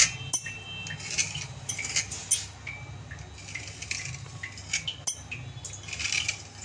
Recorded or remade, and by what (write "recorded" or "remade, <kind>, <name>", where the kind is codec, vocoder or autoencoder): recorded